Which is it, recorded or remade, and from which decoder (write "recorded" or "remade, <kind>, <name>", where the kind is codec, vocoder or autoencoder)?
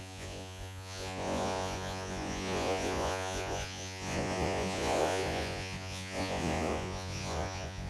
remade, vocoder, Vocos